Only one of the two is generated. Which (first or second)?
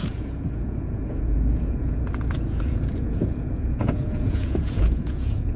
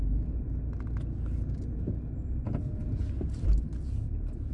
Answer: first